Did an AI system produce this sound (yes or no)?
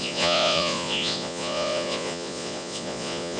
yes